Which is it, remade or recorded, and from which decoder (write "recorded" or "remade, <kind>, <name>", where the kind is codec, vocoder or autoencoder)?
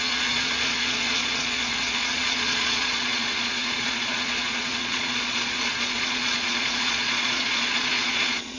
remade, vocoder, Vocos